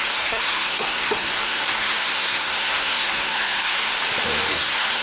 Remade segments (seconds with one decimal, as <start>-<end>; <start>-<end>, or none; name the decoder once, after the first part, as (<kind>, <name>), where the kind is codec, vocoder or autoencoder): 0.0-3.9 (codec, SNAC); 4.5-5.0